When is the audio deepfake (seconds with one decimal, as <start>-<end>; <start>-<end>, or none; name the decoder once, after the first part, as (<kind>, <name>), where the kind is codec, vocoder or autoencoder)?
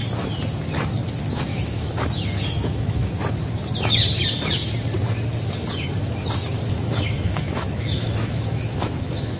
1.5-3.1 (autoencoder, DAC-VAE); 6.7-9.4